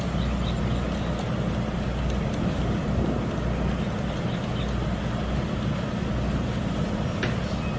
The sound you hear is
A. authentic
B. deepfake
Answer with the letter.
A